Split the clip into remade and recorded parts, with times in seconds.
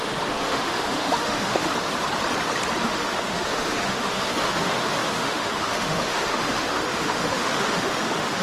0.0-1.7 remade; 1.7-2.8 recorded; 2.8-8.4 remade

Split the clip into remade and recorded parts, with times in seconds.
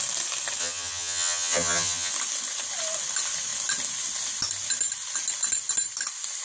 0.0-0.6 recorded; 0.6-2.1 remade; 2.1-6.4 recorded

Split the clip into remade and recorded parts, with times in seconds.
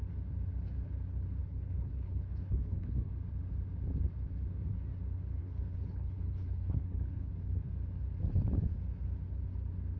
0.0-1.4 recorded; 1.4-3.1 remade; 3.1-5.4 recorded; 5.4-7.3 remade; 7.3-10.0 recorded